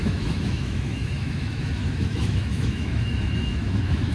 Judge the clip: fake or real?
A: fake